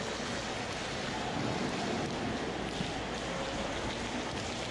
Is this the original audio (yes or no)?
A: yes